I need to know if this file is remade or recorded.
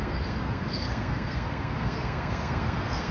remade